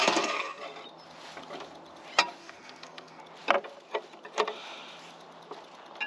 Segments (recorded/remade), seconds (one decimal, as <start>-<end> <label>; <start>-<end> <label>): 0.0-0.6 remade; 0.6-2.4 recorded; 2.4-3.2 remade; 3.2-6.1 recorded